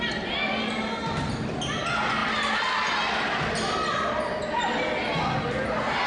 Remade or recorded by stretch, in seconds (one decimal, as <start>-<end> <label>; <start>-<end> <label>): 0.0-6.1 recorded